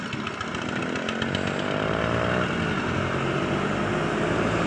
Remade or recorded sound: recorded